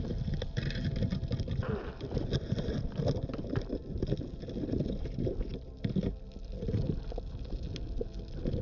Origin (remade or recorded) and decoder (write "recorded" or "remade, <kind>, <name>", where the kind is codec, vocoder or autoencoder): recorded